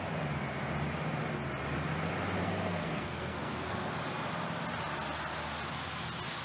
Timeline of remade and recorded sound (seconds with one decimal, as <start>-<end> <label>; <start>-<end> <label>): 0.0-2.4 recorded; 2.4-4.0 remade; 4.0-6.4 recorded